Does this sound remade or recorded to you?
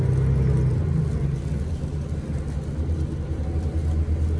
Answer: recorded